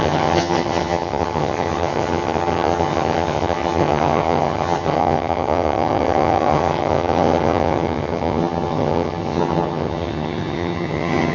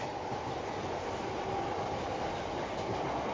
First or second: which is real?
second